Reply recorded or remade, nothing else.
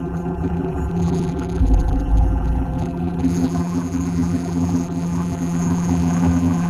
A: remade